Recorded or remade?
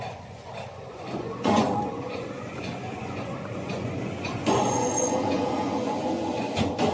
remade